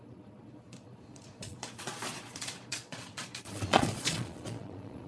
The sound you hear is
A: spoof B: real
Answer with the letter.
A